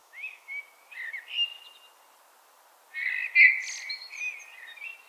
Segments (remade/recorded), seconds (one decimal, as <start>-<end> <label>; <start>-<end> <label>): 0.0-0.6 remade; 0.6-5.1 recorded